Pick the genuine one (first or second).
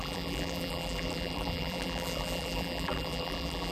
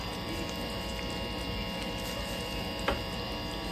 second